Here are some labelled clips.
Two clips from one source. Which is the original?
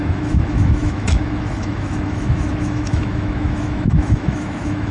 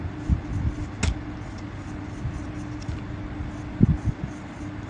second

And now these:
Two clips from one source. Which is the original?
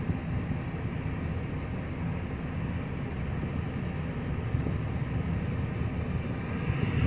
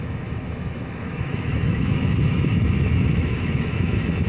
first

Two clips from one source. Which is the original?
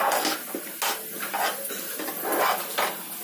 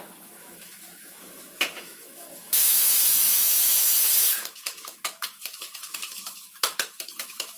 first